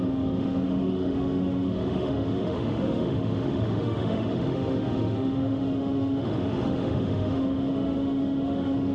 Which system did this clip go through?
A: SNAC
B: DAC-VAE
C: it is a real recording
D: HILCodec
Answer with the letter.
B